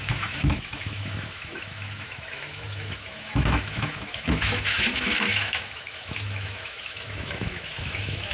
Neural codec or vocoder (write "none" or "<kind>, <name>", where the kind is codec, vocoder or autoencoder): autoencoder, DAC-VAE